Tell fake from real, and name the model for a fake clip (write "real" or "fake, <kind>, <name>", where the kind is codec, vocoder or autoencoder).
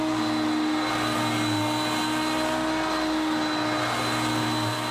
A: real